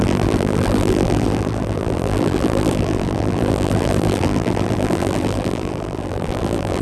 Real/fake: fake